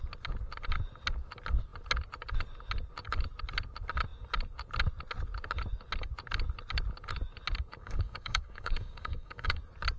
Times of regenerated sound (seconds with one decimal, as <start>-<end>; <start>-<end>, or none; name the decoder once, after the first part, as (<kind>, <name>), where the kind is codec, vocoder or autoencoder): 7.7-9.6 (codec, DAC)